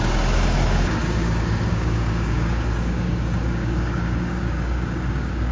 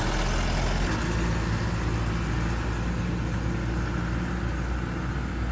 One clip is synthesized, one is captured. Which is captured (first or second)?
second